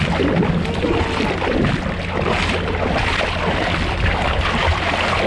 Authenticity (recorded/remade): recorded